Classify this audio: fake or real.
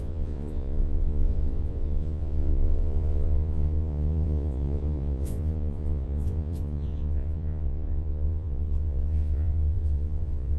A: fake